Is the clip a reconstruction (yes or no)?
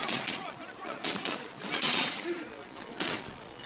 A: yes